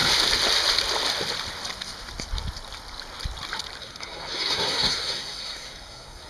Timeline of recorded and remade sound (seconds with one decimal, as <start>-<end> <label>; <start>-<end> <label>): 0.0-3.8 recorded; 3.8-6.3 remade